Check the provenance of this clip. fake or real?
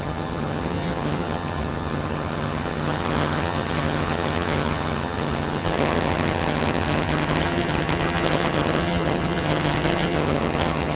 fake